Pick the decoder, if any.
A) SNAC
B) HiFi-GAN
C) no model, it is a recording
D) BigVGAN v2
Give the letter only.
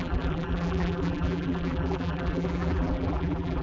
D